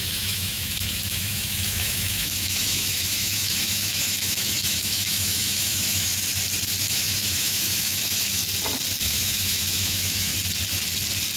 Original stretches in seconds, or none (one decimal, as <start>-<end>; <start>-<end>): 6.1-6.8; 8.4-9.0; 10.3-11.4